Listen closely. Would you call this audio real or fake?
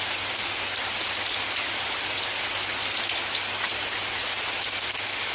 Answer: real